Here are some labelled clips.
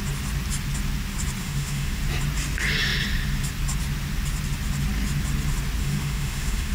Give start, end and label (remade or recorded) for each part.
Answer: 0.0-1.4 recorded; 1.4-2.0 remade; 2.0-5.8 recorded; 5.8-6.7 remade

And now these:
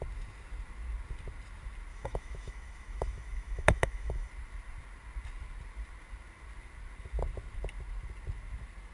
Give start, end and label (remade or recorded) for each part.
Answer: 0.0-1.9 recorded; 1.9-4.3 remade; 4.3-8.9 recorded

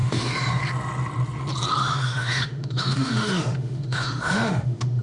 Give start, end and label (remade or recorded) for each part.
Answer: 0.0-0.6 remade; 0.6-1.8 recorded; 1.8-5.0 remade